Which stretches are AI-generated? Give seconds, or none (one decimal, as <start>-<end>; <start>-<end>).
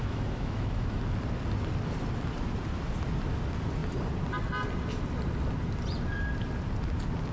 0.0-1.0